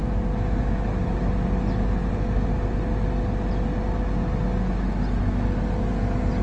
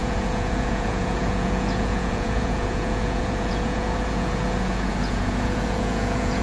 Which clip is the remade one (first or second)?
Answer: second